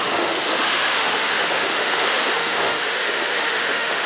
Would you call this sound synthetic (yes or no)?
yes